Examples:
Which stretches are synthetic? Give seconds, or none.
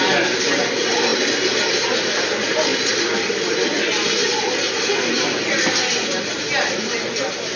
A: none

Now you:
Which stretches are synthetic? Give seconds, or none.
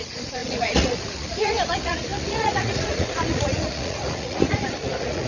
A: 0.0-5.3 (vocoder, Vocos)